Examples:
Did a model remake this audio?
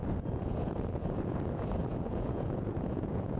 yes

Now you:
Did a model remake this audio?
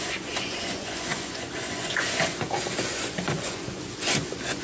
yes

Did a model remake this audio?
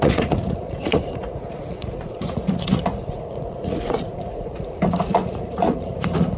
yes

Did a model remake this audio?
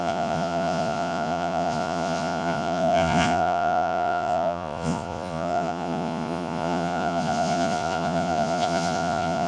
yes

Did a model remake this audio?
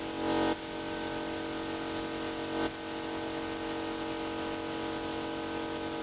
no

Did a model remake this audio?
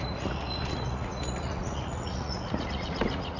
yes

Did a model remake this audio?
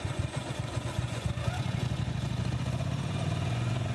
yes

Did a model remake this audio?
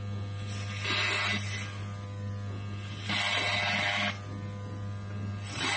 no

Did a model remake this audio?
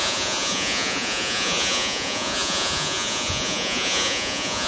yes